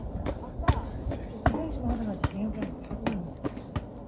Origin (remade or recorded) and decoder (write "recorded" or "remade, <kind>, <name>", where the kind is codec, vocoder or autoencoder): recorded